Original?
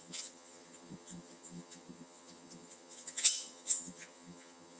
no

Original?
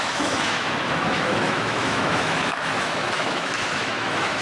no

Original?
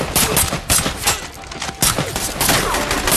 yes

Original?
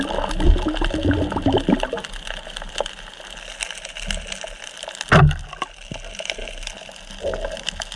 yes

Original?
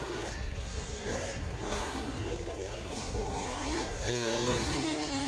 no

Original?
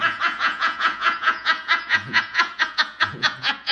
no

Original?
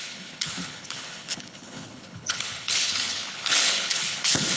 no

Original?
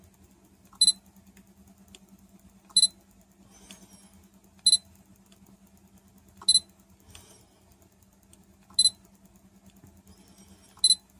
yes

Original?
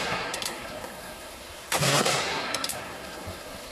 no